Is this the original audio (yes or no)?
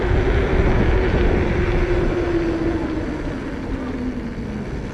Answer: yes